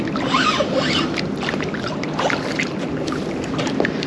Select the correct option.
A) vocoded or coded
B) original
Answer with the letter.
B